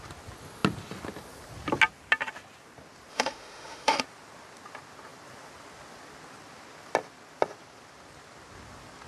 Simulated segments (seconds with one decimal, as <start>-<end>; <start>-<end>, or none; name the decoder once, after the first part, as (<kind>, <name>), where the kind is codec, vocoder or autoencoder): 3.1-4.0 (autoencoder, DAC-VAE)

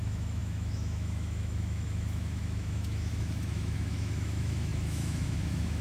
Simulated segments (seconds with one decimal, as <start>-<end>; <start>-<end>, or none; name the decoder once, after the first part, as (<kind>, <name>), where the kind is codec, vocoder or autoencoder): 0.0-5.8 (autoencoder, DAC-VAE)

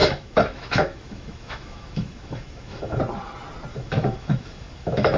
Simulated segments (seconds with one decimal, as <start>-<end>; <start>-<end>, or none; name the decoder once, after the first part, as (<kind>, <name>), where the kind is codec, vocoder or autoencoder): 0.0-3.0 (autoencoder, DAC-VAE); 3.7-5.2

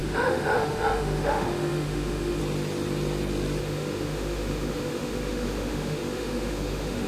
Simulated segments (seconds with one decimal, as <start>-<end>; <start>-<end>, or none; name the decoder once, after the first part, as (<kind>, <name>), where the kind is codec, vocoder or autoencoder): 0.0-2.4 (autoencoder, DAC-VAE); 3.6-7.1

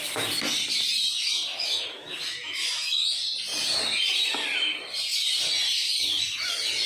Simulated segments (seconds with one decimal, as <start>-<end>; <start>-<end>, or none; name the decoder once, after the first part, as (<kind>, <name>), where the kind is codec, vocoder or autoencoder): 1.5-3.1 (autoencoder, DAC-VAE)

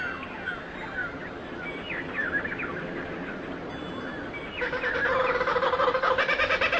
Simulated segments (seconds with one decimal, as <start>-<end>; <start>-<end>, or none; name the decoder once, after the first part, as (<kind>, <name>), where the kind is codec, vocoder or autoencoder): none

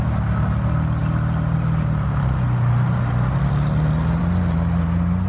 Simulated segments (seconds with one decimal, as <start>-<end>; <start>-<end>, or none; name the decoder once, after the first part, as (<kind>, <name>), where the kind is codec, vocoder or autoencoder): none

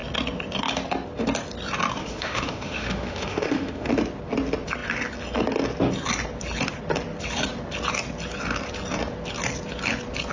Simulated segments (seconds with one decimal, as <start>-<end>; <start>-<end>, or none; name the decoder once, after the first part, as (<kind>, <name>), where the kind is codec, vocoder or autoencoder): 2.0-3.9 (autoencoder, DAC-VAE)